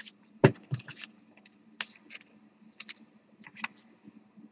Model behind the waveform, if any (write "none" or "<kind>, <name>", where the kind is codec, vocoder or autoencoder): none